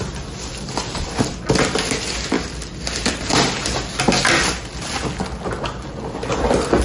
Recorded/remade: recorded